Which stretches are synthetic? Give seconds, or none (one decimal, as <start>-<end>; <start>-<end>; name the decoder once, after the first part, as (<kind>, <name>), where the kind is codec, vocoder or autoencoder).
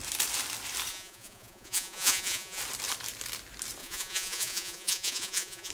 0.9-2.6 (vocoder, Vocos); 3.8-5.7